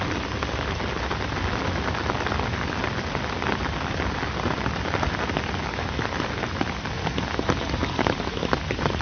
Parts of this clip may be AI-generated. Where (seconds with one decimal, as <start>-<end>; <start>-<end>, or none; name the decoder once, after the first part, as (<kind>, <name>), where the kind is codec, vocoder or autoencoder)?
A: none